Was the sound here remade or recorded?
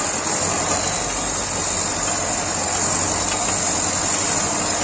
recorded